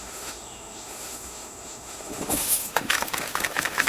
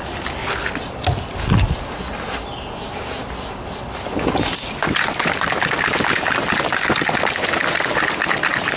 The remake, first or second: first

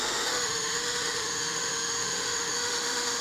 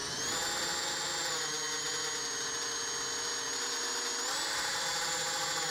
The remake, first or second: first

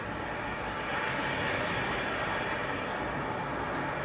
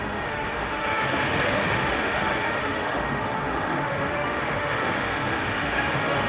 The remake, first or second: second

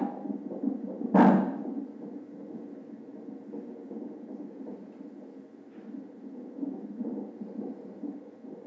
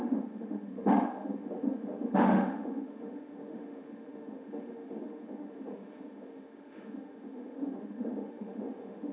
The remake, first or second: second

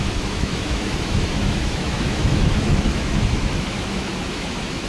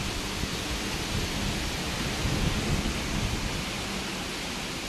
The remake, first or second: first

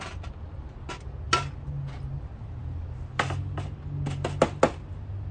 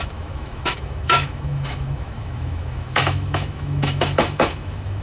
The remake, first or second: second